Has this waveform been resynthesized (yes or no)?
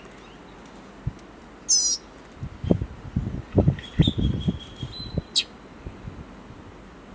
no